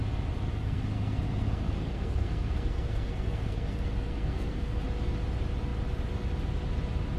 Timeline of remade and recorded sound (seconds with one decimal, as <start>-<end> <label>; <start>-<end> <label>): 0.0-0.5 recorded; 0.5-4.8 remade; 4.8-7.2 recorded